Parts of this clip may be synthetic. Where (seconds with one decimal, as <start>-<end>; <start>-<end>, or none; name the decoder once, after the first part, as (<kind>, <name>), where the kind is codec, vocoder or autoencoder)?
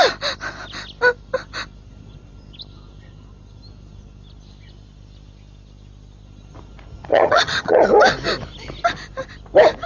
7.1-7.8 (vocoder, HiFi-GAN)